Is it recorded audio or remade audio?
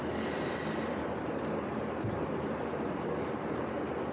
recorded